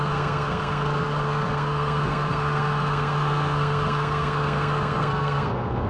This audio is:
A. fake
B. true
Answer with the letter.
A